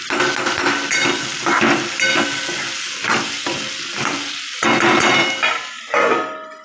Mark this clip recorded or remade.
recorded